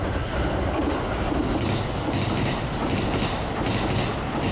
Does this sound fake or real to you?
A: real